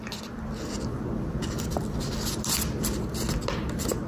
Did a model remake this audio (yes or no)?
no